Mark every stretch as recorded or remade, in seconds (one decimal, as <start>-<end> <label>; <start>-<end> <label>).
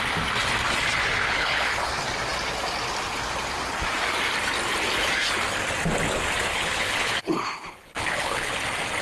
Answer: 0.0-1.2 recorded; 1.2-1.9 remade; 1.9-6.5 recorded; 6.5-8.5 remade; 8.5-9.0 recorded